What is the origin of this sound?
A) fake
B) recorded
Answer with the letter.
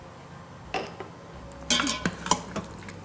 B